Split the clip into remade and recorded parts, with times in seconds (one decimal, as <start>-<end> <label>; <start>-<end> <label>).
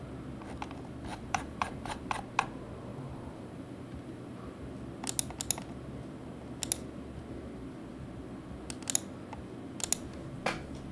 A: 0.0-1.1 recorded; 1.1-2.1 remade; 2.1-2.9 recorded; 2.9-4.7 remade; 4.7-10.9 recorded